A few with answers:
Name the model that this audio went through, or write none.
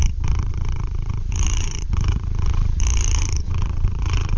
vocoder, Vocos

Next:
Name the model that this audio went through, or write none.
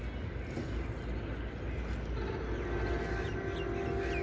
none